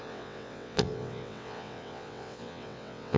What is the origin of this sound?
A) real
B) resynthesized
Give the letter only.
B